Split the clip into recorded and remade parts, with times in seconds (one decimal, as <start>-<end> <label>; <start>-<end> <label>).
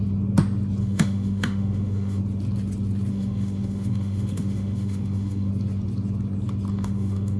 0.0-0.8 recorded; 0.8-2.2 remade; 2.2-3.1 recorded; 3.1-5.5 remade; 5.5-6.7 recorded; 6.7-7.4 remade